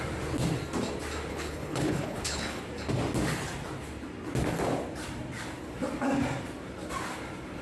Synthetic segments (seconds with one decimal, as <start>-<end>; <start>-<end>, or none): 1.3-2.6